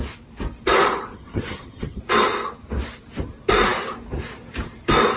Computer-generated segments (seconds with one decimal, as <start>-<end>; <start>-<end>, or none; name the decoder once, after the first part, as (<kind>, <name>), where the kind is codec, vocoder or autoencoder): 1.1-2.0 (vocoder, HiFi-GAN)